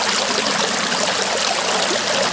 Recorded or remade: recorded